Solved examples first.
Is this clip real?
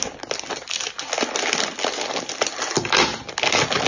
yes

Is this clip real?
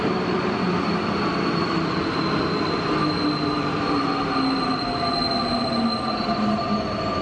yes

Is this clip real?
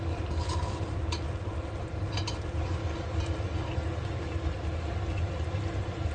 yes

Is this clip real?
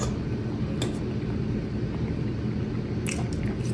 yes